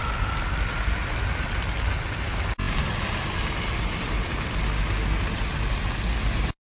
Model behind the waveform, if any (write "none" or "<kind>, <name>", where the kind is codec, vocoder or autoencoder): none